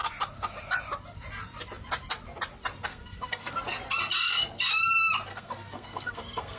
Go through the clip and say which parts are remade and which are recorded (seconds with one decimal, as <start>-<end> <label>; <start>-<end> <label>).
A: 0.0-2.9 recorded; 2.9-3.6 remade; 3.6-5.3 recorded; 5.3-6.6 remade